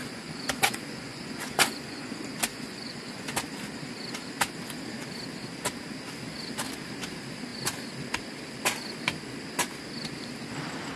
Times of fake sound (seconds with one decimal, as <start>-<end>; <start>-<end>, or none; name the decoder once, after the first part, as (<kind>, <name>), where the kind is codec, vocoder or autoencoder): 0.0-2.1 (vocoder, Vocos); 2.5-3.3